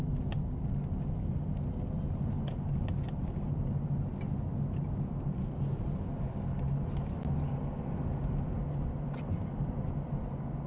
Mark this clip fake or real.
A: real